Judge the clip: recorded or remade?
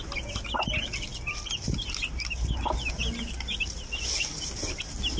recorded